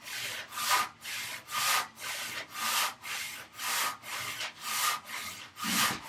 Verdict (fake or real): real